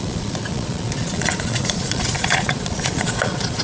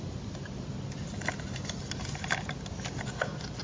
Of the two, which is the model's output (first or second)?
first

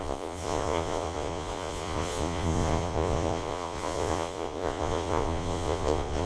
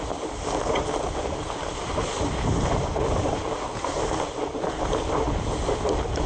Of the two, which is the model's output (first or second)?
first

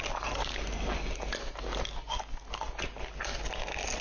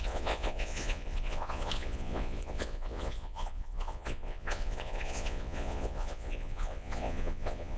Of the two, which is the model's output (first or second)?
second